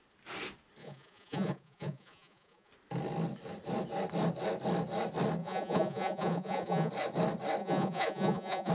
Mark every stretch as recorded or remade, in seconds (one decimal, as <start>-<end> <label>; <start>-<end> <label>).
0.0-0.8 recorded; 0.8-2.7 remade; 2.7-5.4 recorded; 5.4-6.9 remade; 6.9-7.6 recorded; 7.6-8.7 remade